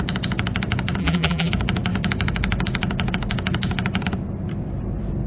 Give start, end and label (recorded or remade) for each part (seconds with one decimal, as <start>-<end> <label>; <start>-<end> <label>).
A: 0.0-1.0 recorded; 1.0-1.5 remade; 1.5-5.3 recorded